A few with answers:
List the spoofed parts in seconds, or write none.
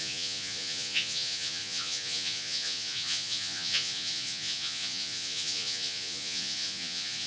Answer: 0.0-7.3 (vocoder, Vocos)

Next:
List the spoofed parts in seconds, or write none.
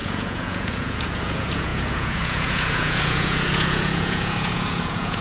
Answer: 0.0-5.2 (vocoder, Vocos)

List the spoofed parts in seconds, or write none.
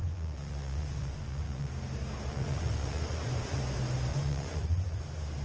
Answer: 0.0-1.7 (vocoder, Vocos); 2.3-3.6; 4.1-5.0